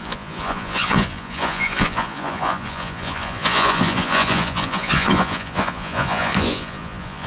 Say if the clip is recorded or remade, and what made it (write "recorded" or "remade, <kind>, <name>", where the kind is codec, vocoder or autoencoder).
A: remade, vocoder, Vocos